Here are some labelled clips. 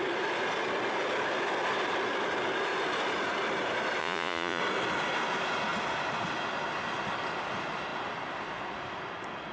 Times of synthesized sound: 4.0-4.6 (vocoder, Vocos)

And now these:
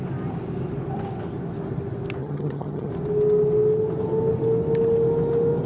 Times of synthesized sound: 2.2-2.9 (vocoder, HiFi-GAN)

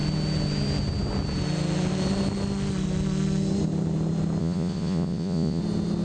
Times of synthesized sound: 4.4-5.6 (vocoder, Vocos)

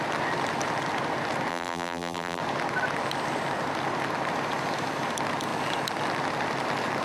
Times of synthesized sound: 1.5-2.4 (vocoder, BigVGAN v2)